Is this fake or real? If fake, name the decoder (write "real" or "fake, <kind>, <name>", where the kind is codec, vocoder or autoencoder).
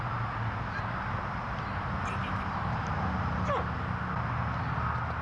real